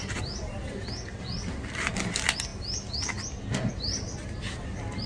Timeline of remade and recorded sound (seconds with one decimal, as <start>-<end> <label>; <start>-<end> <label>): 0.0-0.6 remade; 0.6-1.2 recorded; 1.2-2.5 remade; 2.5-3.7 recorded; 3.7-5.1 remade